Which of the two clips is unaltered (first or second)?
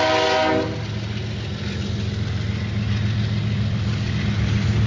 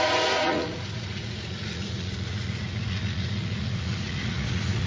first